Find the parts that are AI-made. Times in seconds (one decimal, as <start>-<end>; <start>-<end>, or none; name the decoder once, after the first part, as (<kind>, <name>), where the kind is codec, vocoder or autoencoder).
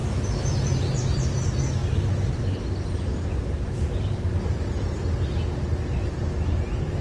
none